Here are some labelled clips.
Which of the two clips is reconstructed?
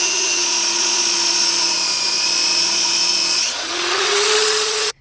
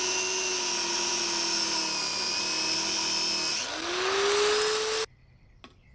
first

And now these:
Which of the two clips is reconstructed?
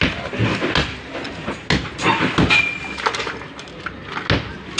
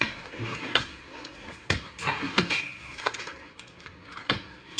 second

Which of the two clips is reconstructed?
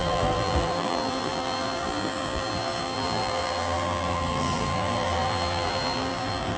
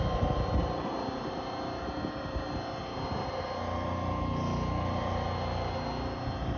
first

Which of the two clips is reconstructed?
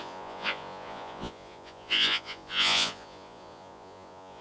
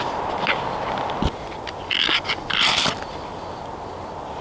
first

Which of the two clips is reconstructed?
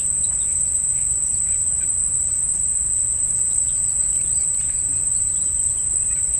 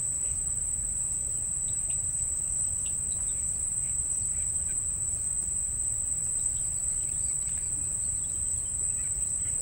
second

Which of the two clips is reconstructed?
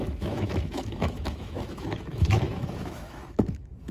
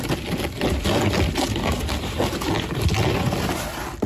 first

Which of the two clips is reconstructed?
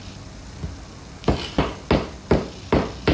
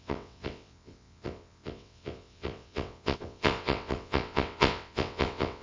second